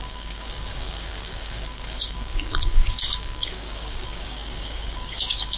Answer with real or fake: fake